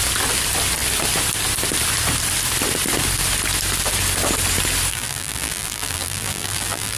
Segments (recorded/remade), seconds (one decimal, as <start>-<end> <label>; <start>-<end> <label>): 0.0-4.9 recorded; 4.9-7.0 remade